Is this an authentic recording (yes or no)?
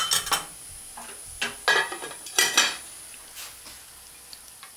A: yes